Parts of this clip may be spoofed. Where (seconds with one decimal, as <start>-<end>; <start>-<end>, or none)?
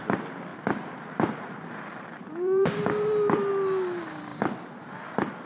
0.5-3.5; 4.3-4.8